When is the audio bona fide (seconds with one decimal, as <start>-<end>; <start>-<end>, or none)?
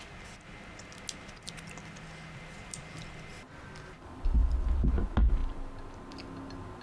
0.0-6.8